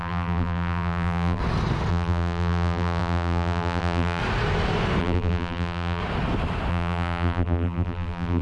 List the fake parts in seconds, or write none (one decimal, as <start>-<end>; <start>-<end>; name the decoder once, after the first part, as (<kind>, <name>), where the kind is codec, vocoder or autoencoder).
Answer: 0.0-1.4 (vocoder, BigVGAN v2); 1.9-4.2; 5.0-6.0; 6.7-8.4